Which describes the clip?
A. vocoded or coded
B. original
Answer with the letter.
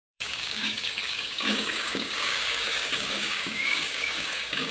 A